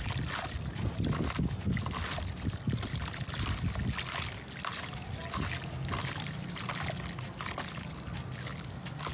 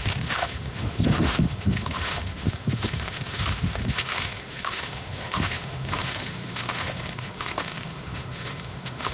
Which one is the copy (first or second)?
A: second